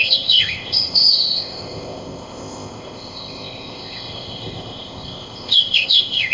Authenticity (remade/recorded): remade